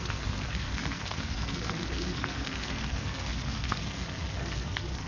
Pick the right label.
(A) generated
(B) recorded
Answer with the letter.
A